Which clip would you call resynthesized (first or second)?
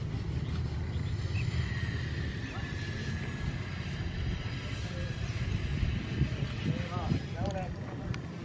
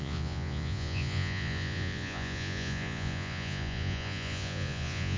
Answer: second